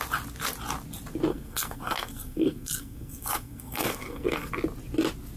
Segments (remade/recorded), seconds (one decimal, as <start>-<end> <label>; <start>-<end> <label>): 0.0-1.3 recorded; 1.3-4.5 remade; 4.5-5.4 recorded